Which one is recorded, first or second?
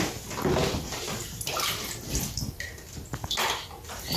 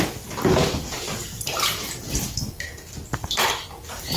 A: first